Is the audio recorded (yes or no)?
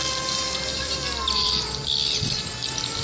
no